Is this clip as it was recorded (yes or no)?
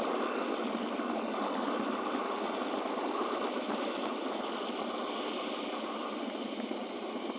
yes